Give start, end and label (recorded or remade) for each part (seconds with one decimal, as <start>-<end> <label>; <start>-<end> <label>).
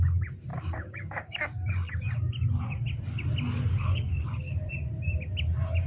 0.0-0.5 recorded; 0.5-2.1 remade; 2.1-3.7 recorded; 3.7-4.7 remade; 4.7-5.9 recorded